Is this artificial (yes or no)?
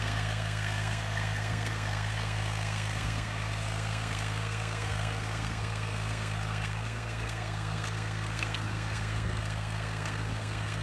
yes